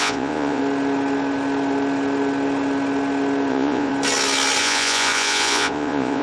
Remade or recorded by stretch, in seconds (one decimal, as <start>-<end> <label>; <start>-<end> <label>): 0.0-0.6 remade; 0.6-3.5 recorded; 3.5-3.9 remade; 3.9-4.6 recorded; 4.6-6.2 remade